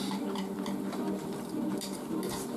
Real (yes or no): no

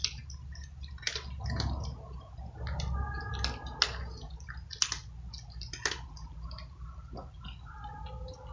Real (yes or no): yes